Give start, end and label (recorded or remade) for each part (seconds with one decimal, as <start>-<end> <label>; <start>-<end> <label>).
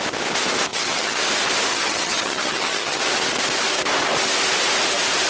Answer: 0.0-0.7 recorded; 0.7-1.2 remade; 1.2-1.7 recorded; 1.7-3.0 remade; 3.0-5.3 recorded